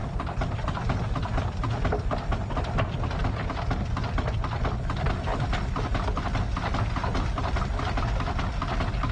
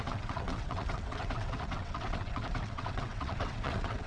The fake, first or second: second